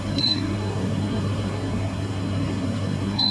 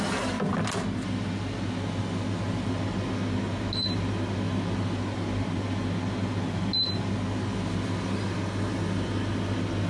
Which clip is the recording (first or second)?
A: second